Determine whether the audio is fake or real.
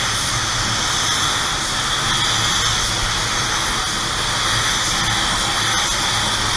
real